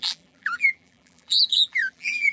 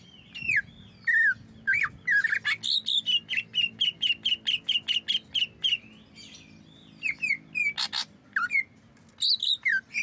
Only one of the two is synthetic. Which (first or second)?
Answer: first